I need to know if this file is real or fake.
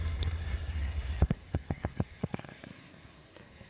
fake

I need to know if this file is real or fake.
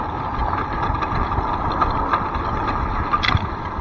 real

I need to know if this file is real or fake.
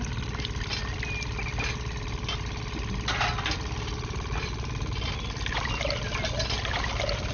real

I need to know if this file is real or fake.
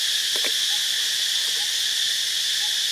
real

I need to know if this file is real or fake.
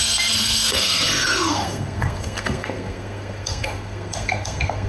fake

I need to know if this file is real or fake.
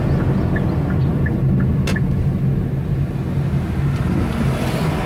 real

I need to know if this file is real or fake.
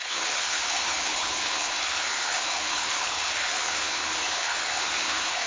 fake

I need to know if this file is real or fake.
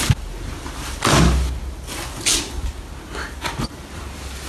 real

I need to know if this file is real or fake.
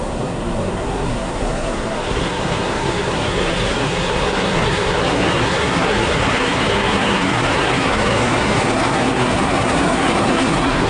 fake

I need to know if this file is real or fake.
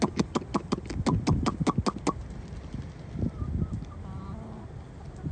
real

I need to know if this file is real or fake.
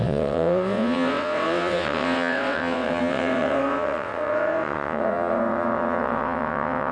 fake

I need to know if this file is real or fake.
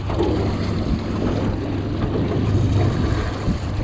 real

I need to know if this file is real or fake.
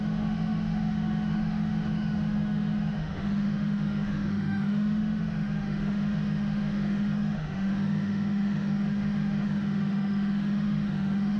fake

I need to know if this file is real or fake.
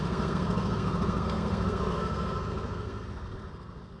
fake